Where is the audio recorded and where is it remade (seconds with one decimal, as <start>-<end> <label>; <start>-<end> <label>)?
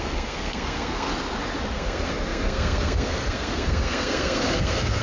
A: 0.0-1.1 remade; 1.1-1.7 recorded; 1.7-5.0 remade